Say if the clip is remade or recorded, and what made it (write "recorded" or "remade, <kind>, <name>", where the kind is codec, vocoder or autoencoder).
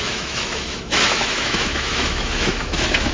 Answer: remade, autoencoder, DAC-VAE